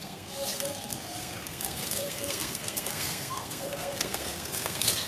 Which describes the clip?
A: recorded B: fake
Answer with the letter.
B